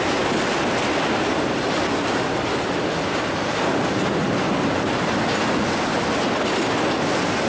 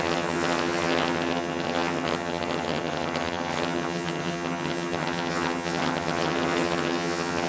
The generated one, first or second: second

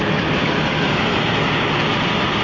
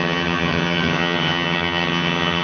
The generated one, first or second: second